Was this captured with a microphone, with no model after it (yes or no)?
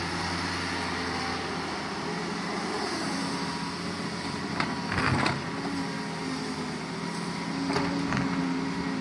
yes